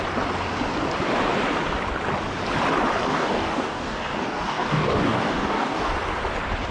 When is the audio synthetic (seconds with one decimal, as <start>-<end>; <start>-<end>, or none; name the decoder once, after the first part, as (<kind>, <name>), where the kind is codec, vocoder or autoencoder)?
3.1-5.9 (codec, DAC)